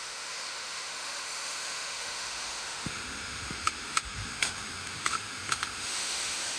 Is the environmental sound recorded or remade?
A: remade